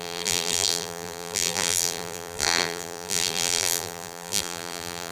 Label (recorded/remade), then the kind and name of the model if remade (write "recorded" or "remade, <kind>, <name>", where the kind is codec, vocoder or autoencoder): remade, vocoder, BigVGAN v2